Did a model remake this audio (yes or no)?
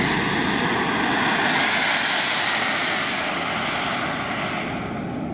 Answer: no